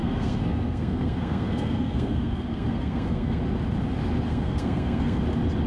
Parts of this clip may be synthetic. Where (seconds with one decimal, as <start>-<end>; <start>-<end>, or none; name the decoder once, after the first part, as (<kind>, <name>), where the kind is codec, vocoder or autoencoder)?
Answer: 0.0-3.4 (codec, SNAC); 4.3-5.2